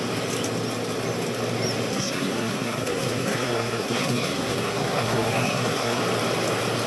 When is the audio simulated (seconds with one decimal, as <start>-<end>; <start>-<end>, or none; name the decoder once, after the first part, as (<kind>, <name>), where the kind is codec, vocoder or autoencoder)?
1.9-6.0 (codec, SNAC)